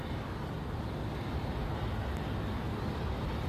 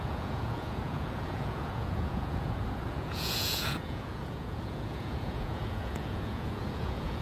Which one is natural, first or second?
first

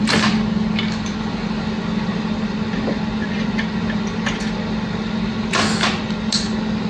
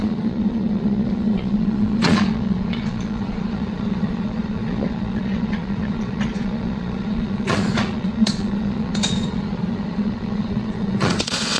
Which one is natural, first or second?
first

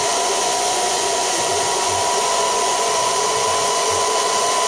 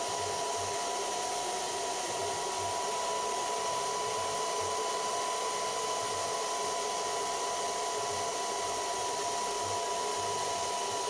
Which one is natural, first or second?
second